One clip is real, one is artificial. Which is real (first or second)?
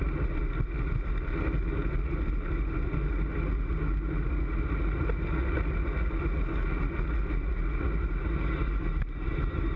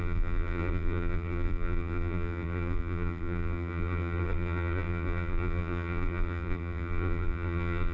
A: first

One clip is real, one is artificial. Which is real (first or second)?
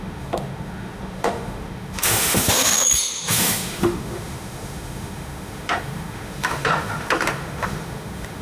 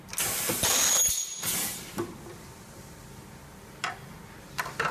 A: second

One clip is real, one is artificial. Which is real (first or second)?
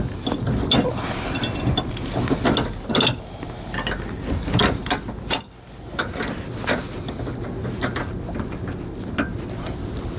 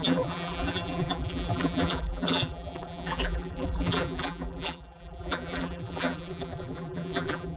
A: first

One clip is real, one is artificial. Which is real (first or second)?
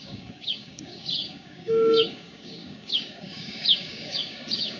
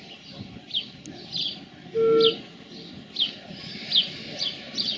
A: second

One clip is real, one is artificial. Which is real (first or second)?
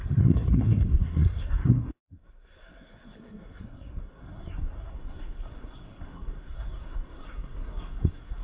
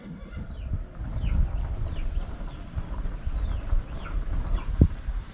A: second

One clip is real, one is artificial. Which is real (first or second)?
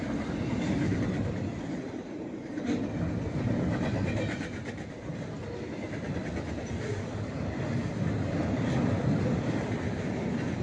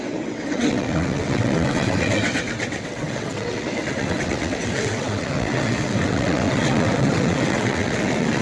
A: first